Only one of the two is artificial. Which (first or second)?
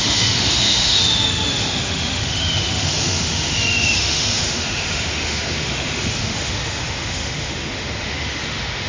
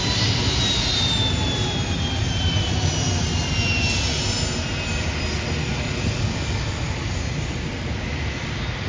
first